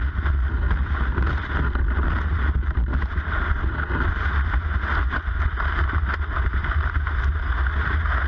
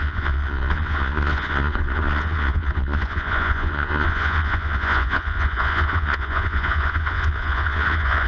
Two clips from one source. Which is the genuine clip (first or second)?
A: first